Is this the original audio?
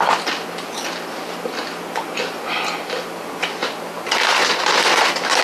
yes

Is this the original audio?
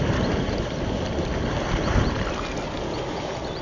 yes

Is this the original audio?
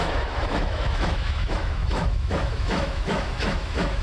no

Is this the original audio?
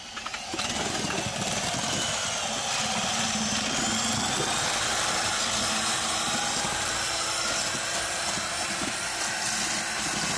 yes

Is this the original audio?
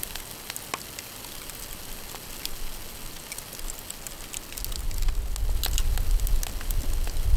yes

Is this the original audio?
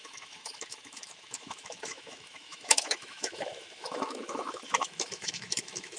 no